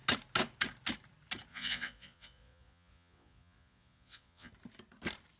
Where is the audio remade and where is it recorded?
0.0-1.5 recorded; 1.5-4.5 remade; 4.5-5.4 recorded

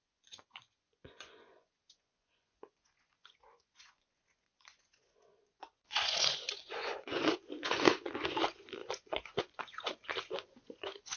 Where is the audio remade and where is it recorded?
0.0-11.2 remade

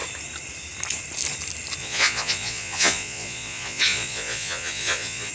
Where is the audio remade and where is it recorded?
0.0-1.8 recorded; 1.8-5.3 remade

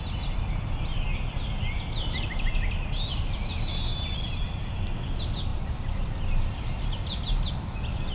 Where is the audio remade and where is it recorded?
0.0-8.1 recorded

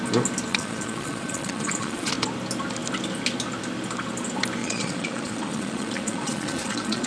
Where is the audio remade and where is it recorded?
0.0-0.5 recorded; 0.5-2.1 remade; 2.1-4.6 recorded; 4.6-7.1 remade

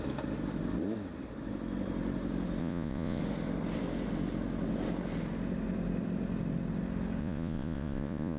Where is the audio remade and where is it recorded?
0.0-2.6 recorded; 2.6-3.2 remade; 3.2-7.2 recorded; 7.2-8.4 remade